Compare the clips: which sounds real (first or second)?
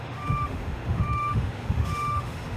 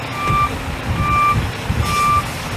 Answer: second